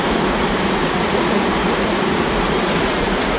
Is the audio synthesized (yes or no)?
yes